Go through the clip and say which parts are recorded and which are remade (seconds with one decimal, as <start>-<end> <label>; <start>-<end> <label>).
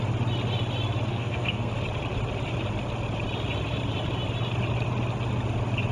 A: 0.0-1.1 recorded; 1.1-1.7 remade; 1.7-5.9 recorded